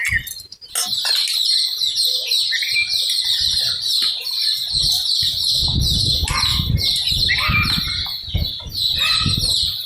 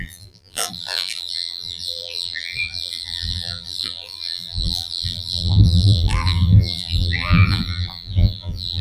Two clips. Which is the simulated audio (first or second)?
second